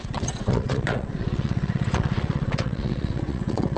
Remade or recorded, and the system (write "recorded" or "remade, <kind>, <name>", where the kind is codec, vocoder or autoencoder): remade, vocoder, WaveNeXt